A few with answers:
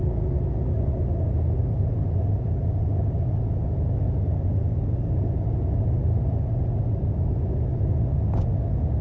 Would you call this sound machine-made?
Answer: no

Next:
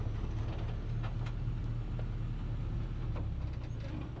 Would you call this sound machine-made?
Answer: no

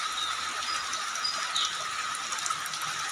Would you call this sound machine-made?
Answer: no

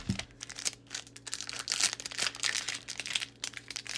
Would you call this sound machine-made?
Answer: no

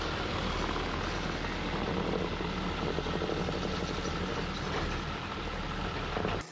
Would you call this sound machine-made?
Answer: no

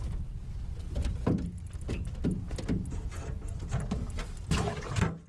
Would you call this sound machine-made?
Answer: no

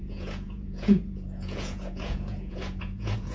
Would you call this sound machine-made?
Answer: yes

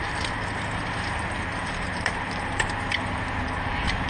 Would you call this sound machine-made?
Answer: yes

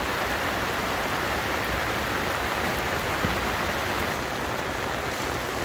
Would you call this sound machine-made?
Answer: no